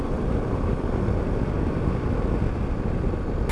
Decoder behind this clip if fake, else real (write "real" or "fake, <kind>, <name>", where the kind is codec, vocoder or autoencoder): real